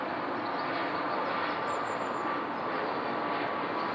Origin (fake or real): real